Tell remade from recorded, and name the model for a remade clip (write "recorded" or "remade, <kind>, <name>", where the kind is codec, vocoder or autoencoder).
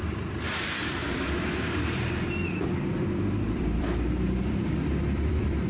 remade, vocoder, BigVGAN v2